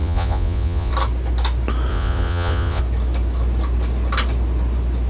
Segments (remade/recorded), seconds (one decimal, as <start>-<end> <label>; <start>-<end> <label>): 0.0-0.9 remade; 0.9-1.9 recorded; 1.9-2.8 remade; 2.8-5.1 recorded